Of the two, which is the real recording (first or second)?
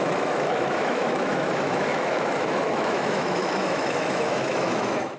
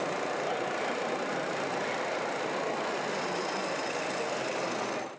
second